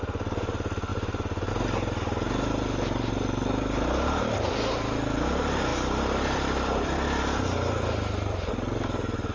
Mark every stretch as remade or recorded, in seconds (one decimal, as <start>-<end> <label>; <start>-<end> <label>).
0.0-5.7 recorded; 5.7-8.5 remade; 8.5-9.3 recorded